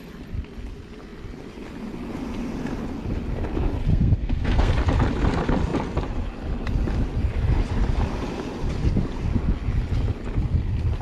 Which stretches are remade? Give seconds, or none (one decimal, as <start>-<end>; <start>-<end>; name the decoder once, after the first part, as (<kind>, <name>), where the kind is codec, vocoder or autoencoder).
3.9-4.7 (codec, SNAC)